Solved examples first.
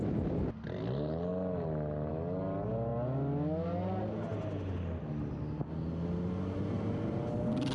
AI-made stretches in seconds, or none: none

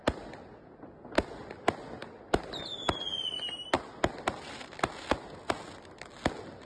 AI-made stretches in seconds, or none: 2.0-2.6

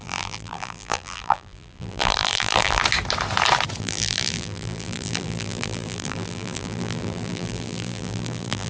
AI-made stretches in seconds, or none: 0.0-2.8; 3.8-8.7

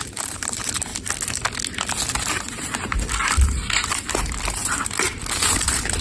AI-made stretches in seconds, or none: 0.0-0.9; 4.5-6.0

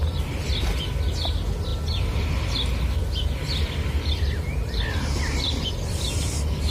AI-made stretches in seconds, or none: 0.0-0.5; 1.7-5.7

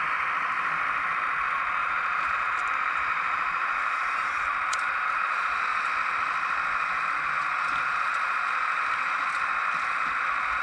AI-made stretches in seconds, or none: 1.8-5.6

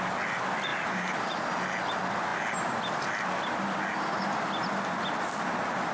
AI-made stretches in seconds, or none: 0.7-1.2